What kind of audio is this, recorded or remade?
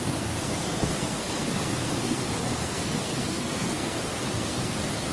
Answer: remade